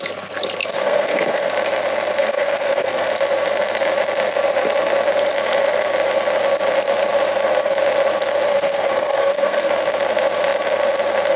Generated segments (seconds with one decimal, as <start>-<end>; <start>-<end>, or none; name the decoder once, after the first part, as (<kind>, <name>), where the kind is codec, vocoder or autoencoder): 0.6-1.5 (codec, SNAC); 2.2-3.1; 8.5-9.7